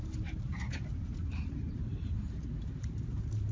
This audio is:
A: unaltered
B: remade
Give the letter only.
B